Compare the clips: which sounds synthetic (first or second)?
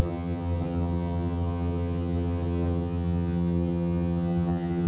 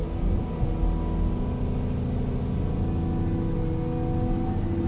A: first